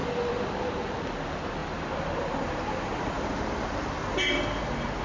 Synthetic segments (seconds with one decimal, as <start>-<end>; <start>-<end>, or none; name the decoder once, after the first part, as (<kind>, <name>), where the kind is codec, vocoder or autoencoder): none